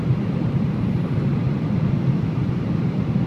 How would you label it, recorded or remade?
recorded